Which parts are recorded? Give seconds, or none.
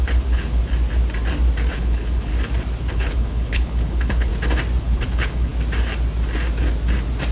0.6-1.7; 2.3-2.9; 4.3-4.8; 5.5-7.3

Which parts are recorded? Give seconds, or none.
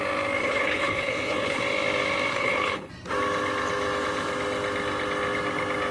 0.0-0.4; 1.6-2.3; 2.9-5.9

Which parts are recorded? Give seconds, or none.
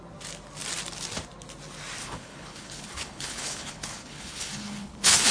0.0-2.0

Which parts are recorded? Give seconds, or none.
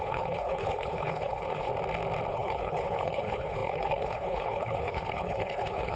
1.7-2.3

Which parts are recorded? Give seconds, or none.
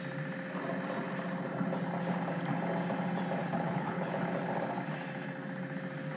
0.0-3.4; 4.1-6.2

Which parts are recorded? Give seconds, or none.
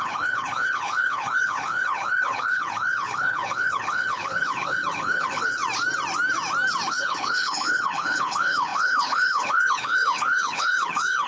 5.6-6.9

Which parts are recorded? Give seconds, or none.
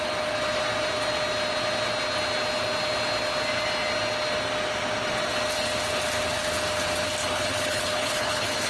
0.0-7.2